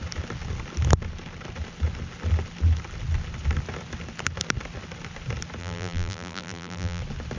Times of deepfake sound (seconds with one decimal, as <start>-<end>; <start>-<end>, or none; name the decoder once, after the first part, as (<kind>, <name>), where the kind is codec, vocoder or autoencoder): 5.6-7.0 (vocoder, BigVGAN v2)